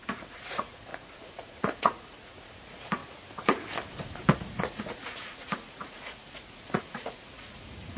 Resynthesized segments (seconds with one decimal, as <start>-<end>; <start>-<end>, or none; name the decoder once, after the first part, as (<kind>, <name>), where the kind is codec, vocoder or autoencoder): 0.0-3.0 (vocoder, Vocos); 4.5-8.0